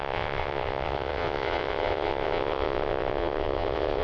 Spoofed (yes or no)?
yes